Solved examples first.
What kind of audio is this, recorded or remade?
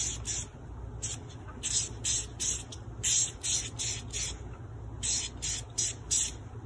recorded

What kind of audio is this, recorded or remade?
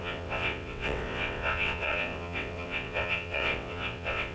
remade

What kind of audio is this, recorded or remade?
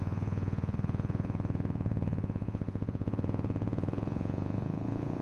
remade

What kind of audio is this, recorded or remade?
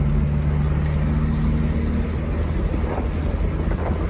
recorded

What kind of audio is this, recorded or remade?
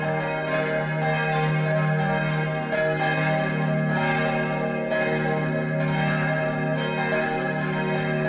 recorded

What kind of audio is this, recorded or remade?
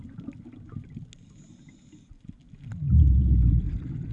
recorded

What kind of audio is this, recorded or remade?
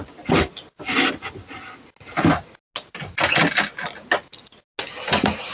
recorded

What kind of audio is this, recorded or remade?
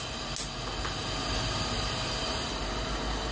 recorded